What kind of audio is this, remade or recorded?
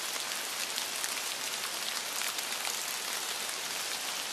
recorded